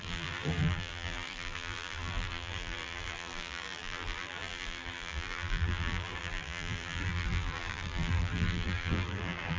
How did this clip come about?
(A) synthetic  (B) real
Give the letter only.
A